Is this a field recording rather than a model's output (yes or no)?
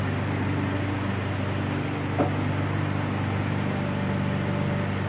yes